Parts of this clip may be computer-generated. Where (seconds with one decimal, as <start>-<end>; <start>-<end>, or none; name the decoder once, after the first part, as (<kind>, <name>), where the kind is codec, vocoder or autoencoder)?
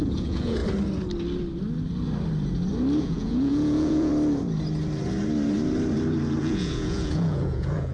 0.0-0.6 (vocoder, Vocos); 3.0-4.1; 6.4-7.9